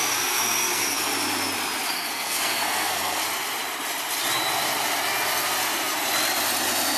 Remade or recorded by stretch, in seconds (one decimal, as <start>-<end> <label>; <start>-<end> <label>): 0.0-1.1 remade; 1.1-1.9 recorded; 1.9-3.2 remade; 3.2-7.0 recorded